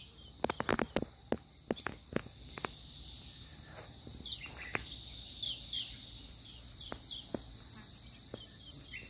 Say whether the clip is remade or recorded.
recorded